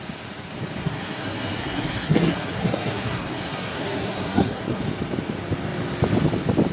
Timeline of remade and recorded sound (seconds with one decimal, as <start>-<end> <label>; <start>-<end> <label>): 0.0-0.8 recorded; 0.8-4.8 remade; 4.8-6.7 recorded